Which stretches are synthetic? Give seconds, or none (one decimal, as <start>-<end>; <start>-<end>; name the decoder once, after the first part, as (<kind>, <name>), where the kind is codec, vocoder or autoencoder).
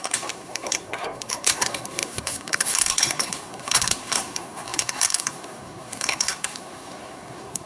0.0-7.7 (codec, SNAC)